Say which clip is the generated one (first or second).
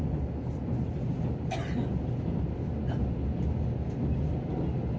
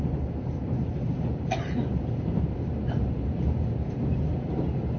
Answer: second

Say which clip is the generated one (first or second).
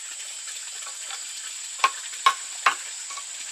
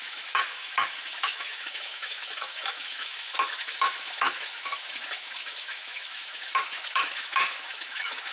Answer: second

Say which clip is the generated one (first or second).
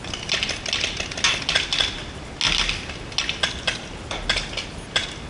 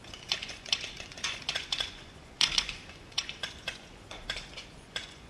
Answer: second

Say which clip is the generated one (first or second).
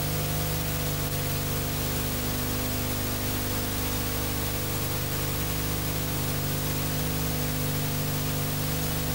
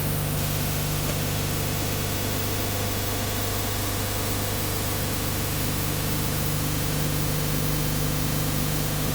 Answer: second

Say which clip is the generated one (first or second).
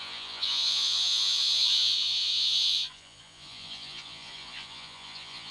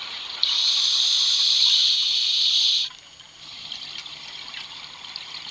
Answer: first